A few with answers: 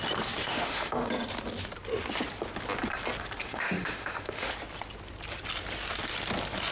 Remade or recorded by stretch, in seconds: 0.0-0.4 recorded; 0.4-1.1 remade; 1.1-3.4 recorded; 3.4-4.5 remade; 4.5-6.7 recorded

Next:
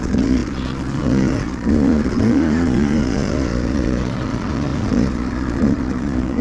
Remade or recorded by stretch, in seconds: 0.0-6.4 remade

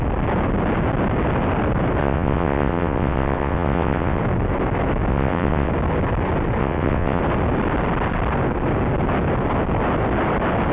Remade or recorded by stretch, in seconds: 0.0-2.0 recorded; 2.0-4.2 remade; 4.2-5.1 recorded; 5.1-5.7 remade; 5.7-6.6 recorded; 6.6-7.2 remade; 7.2-10.7 recorded

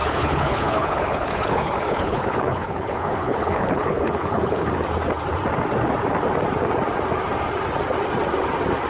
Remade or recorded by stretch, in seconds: 0.0-4.7 remade; 4.7-8.9 recorded

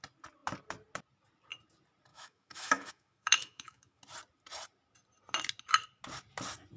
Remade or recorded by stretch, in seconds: 0.0-2.1 recorded; 2.1-4.0 remade; 4.0-6.8 recorded